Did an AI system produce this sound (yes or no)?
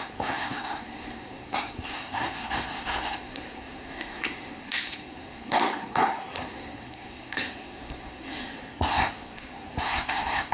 yes